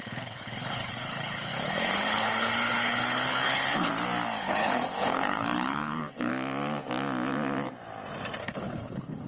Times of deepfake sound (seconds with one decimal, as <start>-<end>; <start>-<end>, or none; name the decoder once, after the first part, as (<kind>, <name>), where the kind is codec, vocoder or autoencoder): 0.0-3.9 (codec, HILCodec); 4.4-6.3; 8.4-9.3